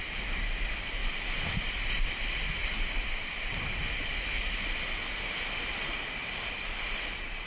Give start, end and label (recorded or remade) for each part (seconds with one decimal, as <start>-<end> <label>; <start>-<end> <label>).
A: 0.0-7.5 recorded